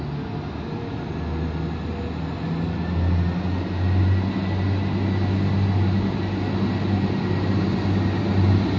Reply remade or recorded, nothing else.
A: recorded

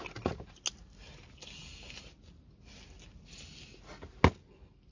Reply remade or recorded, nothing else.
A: recorded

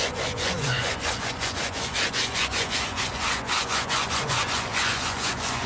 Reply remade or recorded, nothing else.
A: remade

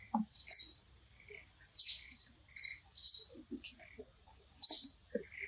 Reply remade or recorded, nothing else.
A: recorded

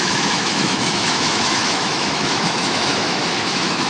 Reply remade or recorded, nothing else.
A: remade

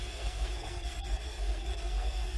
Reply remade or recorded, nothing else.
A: remade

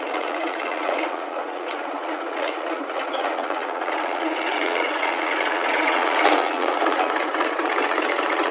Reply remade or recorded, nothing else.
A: remade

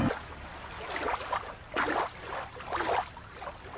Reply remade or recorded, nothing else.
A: recorded